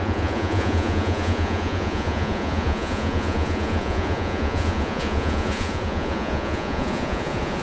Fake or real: fake